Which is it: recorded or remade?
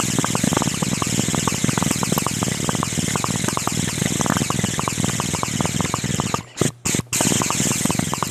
recorded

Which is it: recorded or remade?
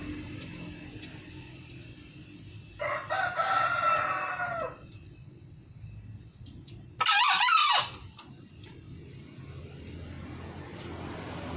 recorded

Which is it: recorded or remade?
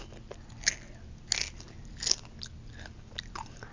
recorded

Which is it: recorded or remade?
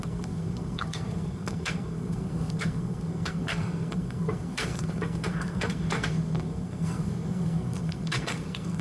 remade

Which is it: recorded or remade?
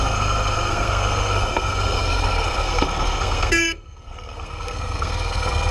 remade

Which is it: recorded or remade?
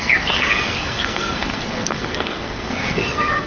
remade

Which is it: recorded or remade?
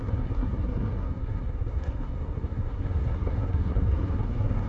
remade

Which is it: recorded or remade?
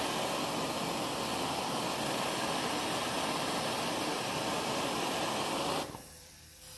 recorded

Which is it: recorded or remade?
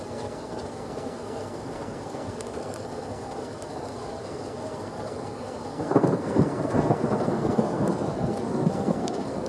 remade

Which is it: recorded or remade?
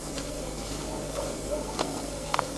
remade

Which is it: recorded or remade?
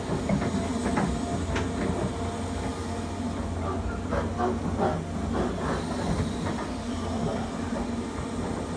recorded